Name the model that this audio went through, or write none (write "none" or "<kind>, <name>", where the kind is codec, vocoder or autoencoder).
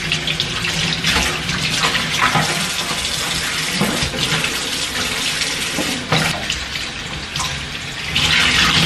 none